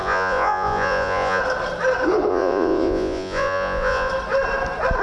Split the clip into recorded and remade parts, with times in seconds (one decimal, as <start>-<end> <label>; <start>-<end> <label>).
0.0-1.4 remade; 1.4-2.3 recorded; 2.3-4.1 remade; 4.1-5.0 recorded